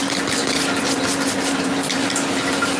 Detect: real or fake real